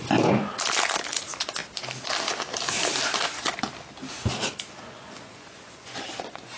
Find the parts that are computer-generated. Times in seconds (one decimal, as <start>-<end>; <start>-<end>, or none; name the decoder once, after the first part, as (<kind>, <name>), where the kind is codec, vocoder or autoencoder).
0.0-0.4 (vocoder, Vocos); 1.1-1.6; 4.7-6.6